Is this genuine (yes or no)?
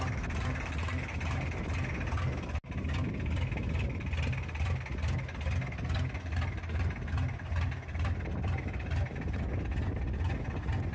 yes